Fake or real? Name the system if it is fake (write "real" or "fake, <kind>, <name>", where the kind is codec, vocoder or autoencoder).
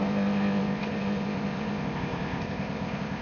fake, codec, ZipCodec